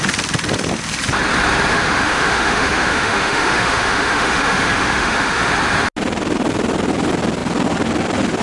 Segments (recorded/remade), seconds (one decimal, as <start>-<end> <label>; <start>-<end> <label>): 0.0-1.7 recorded; 1.7-5.5 remade; 5.5-8.4 recorded